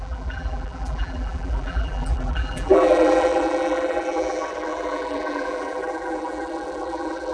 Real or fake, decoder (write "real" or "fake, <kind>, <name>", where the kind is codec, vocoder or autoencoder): fake, vocoder, BigVGAN v2